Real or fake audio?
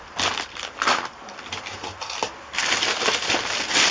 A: real